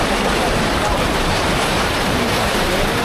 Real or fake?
fake